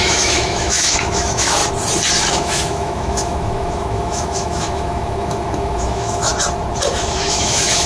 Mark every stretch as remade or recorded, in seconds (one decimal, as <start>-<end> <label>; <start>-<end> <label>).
0.0-1.6 remade; 1.6-2.3 recorded; 2.3-6.3 remade; 6.3-6.9 recorded; 6.9-7.9 remade

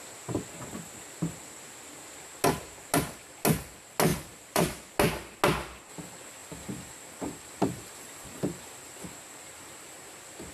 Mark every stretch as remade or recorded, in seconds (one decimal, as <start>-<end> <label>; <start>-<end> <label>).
0.0-4.1 recorded; 4.1-4.9 remade; 4.9-6.4 recorded; 6.4-9.1 remade; 9.1-10.5 recorded

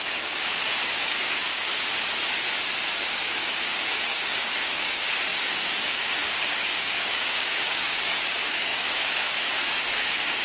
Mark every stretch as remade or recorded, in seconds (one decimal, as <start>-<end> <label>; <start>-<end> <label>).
0.0-1.7 remade; 1.7-3.0 recorded; 3.0-10.4 remade

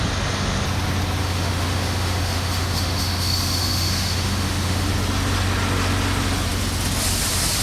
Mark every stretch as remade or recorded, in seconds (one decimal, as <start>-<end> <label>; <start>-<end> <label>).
0.0-1.2 recorded; 1.2-4.9 remade; 4.9-7.6 recorded

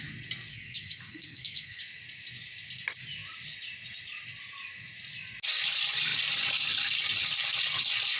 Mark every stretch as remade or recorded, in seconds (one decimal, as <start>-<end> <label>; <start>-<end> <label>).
0.0-0.5 recorded; 0.5-1.8 remade; 1.8-8.2 recorded

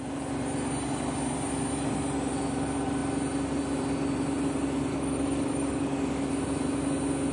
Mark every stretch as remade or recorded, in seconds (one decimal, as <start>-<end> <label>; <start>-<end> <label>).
0.0-4.9 recorded; 4.9-6.3 remade; 6.3-7.3 recorded

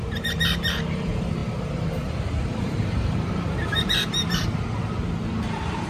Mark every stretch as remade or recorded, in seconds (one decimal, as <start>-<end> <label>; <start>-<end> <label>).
0.0-5.9 remade